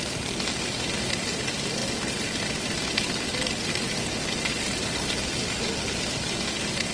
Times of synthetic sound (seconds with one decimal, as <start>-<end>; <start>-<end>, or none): none